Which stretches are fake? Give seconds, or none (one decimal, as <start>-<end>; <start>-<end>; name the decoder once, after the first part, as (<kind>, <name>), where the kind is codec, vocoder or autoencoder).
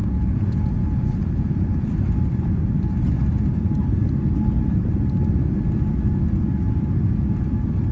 0.0-1.9 (vocoder, Vocos)